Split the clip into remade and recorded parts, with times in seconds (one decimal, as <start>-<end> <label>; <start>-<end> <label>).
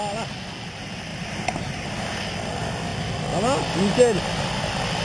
0.0-1.1 recorded; 1.1-2.2 remade; 2.2-5.0 recorded